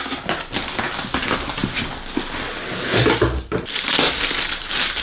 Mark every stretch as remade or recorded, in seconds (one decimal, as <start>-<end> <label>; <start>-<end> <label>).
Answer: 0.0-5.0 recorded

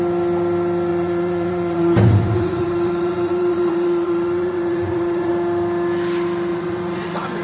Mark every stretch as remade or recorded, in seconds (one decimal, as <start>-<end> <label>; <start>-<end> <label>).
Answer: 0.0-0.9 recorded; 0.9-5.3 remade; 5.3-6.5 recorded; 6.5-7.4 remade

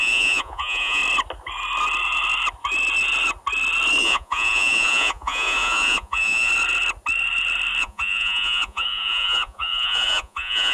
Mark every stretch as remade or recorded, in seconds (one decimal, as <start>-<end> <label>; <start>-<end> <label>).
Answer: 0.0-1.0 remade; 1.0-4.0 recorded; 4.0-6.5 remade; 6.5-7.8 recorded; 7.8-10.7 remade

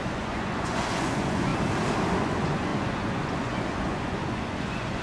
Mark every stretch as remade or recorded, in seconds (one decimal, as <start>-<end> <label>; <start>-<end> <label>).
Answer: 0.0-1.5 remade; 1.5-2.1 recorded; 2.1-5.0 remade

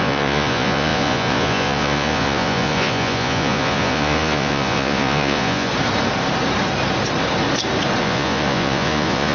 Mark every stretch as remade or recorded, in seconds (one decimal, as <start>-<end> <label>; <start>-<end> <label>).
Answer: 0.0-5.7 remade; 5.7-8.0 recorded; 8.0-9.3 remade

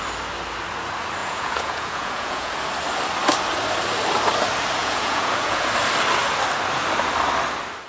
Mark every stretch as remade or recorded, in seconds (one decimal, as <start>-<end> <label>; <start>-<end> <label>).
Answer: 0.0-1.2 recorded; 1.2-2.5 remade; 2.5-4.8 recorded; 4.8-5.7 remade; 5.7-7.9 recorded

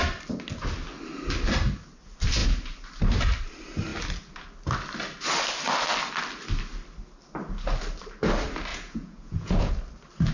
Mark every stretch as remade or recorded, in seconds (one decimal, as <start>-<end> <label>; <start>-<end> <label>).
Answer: 0.0-8.7 recorded; 8.7-9.7 remade; 9.7-10.3 recorded

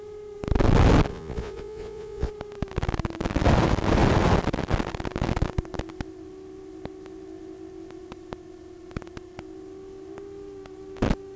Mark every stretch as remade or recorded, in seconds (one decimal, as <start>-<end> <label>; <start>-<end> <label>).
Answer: 0.0-1.1 recorded; 1.1-2.3 remade; 2.3-11.4 recorded